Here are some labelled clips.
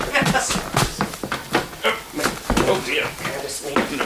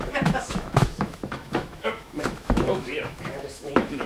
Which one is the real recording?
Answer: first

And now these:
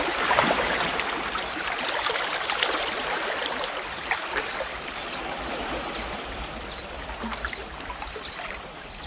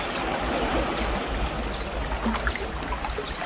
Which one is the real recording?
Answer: second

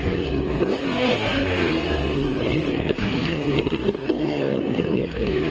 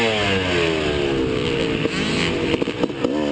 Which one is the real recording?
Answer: second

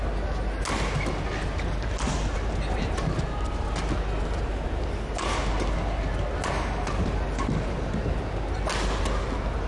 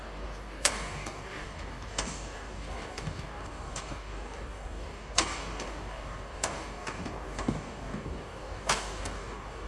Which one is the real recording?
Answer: first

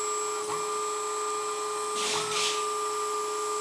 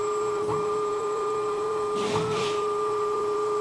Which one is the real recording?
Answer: first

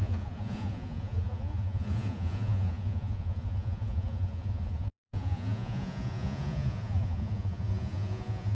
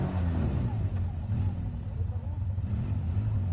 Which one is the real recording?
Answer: second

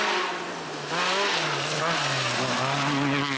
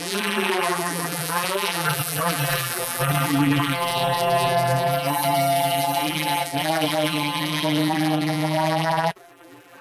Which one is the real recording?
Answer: first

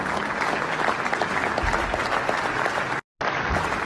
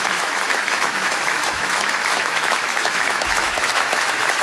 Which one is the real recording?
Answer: first